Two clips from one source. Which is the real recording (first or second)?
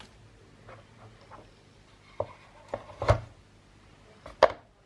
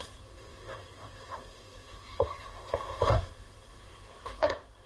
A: first